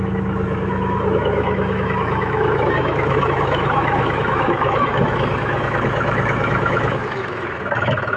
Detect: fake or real fake